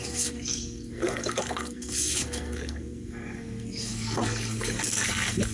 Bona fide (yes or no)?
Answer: no